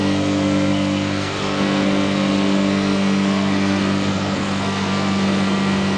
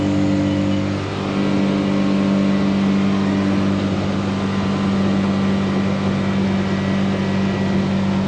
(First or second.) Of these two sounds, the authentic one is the second